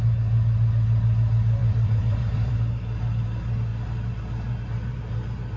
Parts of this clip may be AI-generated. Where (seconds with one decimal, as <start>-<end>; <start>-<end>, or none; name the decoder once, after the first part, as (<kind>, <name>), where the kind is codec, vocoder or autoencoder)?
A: 1.6-2.5 (vocoder, BigVGAN v2)